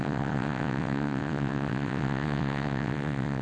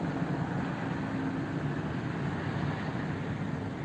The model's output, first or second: first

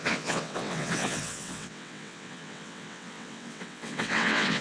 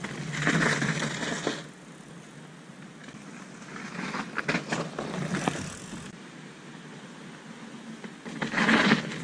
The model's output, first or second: first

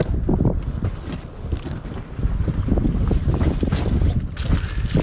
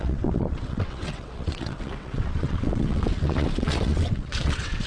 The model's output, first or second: second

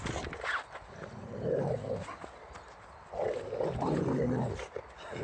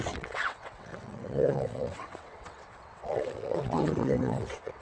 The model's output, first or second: second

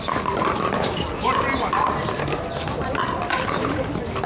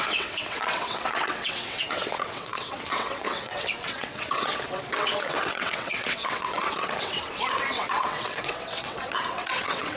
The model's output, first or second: second